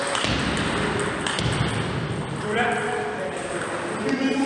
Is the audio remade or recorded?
recorded